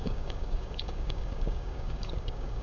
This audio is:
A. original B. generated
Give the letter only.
B